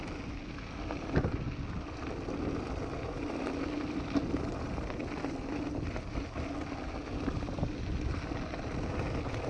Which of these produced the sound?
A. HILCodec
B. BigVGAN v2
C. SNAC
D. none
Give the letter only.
D